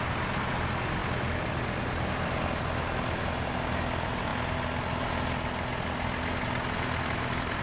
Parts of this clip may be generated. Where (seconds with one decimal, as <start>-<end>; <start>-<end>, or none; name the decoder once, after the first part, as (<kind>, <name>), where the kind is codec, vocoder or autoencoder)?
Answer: none